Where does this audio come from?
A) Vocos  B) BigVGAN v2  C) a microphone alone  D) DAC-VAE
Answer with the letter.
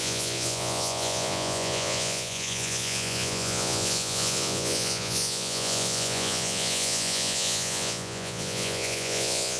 A